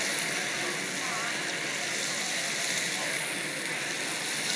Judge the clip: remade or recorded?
recorded